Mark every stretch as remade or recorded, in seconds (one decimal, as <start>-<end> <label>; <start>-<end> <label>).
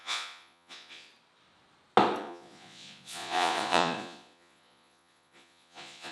0.0-1.1 remade; 1.1-2.2 recorded; 2.2-6.1 remade